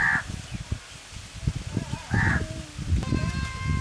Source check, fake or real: real